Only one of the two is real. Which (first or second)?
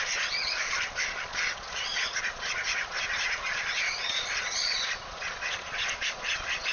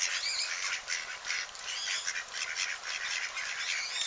second